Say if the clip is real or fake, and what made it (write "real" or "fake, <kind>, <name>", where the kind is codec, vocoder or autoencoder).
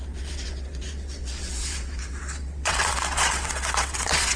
fake, vocoder, WaveNeXt